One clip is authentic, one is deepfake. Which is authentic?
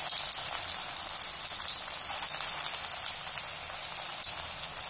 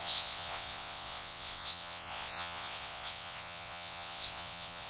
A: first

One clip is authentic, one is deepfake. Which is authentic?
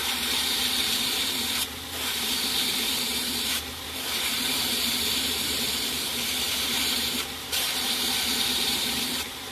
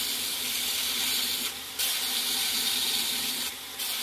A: second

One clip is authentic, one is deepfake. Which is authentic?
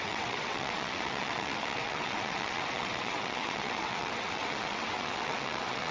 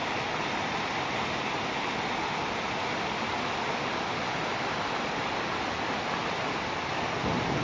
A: second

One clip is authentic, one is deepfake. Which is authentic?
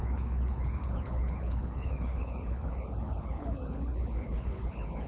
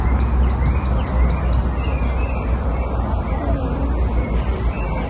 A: second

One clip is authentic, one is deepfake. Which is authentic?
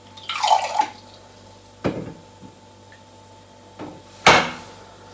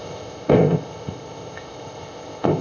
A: first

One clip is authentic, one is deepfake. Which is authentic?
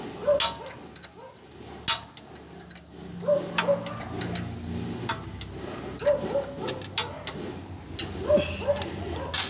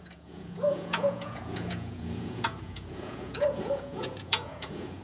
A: first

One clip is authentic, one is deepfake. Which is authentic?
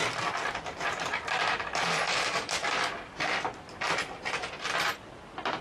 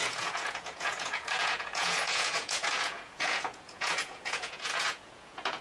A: first